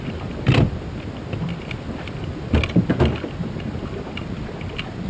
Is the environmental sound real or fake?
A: real